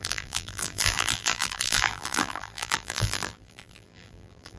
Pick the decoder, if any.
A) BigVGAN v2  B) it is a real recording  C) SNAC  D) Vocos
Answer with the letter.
A